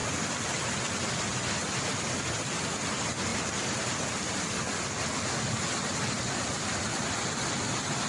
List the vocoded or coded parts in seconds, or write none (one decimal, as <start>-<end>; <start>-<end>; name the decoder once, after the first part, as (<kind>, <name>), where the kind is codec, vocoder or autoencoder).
0.0-0.7 (vocoder, BigVGAN v2); 3.3-8.1